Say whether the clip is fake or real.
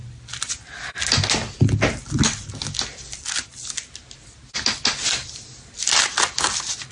real